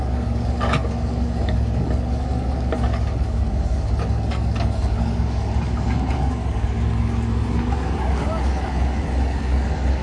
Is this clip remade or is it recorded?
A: remade